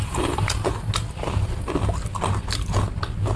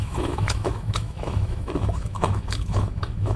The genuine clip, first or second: first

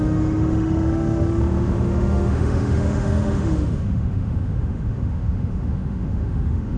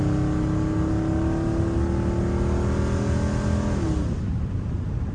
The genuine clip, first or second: second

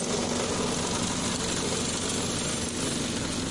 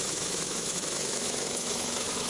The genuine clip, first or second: first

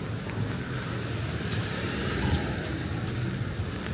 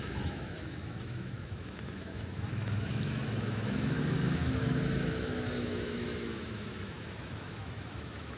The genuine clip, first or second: first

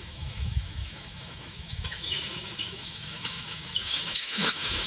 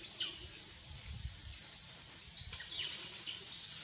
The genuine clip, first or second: second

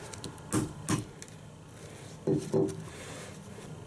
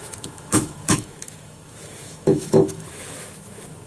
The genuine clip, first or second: first